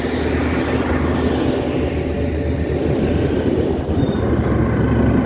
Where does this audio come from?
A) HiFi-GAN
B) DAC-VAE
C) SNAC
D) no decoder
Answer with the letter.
D